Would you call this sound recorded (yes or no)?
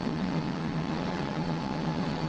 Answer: no